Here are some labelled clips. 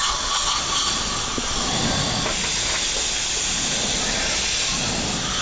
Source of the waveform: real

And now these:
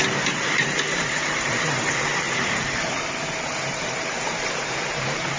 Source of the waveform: fake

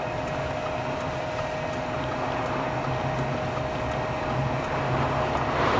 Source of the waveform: real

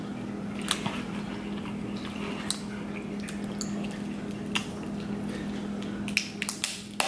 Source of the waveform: real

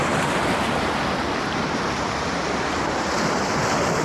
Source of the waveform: real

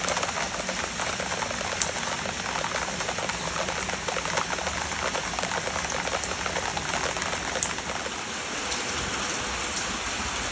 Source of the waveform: real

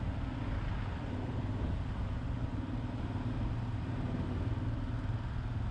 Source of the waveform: real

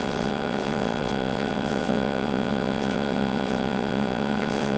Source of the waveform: fake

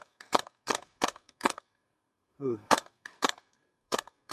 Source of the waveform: fake